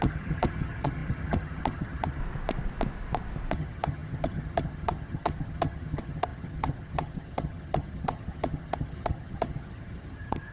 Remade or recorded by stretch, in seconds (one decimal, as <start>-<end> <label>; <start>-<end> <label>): 0.0-2.2 remade; 2.2-3.5 recorded; 3.5-10.5 remade